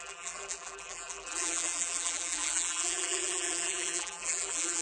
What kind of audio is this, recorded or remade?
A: remade